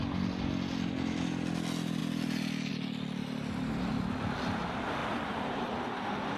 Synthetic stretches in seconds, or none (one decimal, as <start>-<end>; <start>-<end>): 5.0-5.6